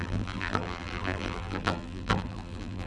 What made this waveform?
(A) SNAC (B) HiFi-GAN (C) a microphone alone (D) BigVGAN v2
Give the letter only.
D